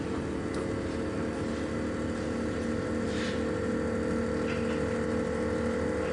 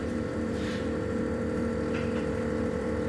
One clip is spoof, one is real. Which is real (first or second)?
first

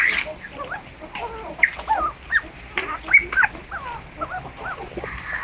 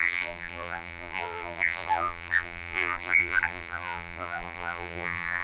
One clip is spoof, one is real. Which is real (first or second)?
first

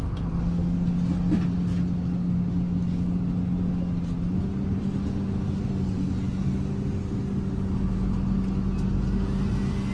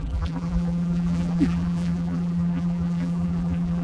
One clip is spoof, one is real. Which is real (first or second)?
first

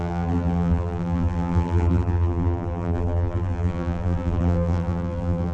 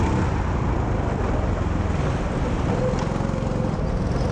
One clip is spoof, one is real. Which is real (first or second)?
second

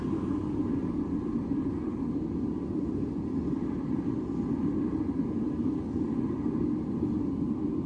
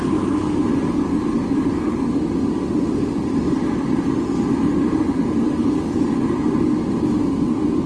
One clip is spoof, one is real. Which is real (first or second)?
second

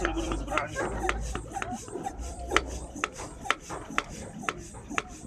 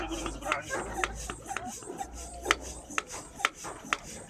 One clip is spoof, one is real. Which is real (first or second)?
second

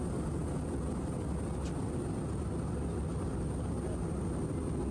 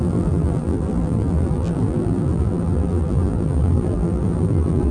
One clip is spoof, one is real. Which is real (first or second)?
first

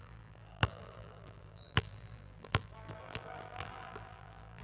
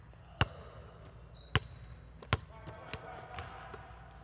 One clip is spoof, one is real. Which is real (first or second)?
second